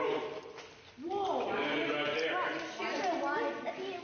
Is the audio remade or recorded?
recorded